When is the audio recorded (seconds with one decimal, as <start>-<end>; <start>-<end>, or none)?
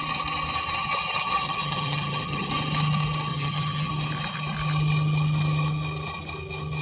0.0-0.8; 2.5-3.3; 3.9-6.8